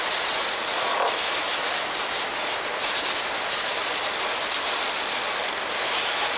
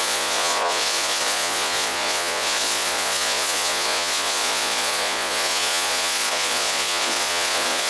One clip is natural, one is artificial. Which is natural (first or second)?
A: first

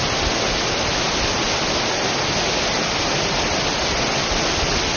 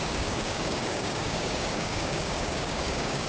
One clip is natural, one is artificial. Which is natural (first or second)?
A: first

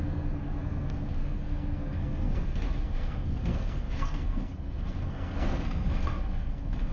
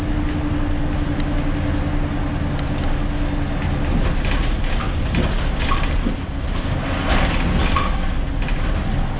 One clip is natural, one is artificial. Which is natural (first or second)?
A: second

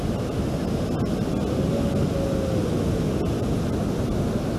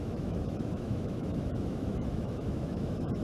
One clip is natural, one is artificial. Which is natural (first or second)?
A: first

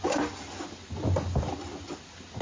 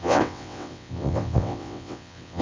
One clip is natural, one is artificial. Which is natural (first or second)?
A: first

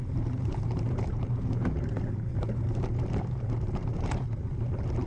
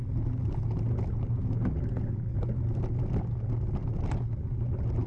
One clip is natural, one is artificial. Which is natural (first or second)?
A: second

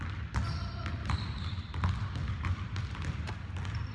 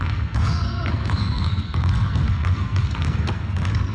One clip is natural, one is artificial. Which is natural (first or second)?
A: first